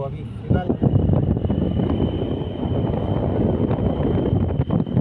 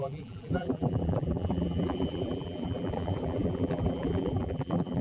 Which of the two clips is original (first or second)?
first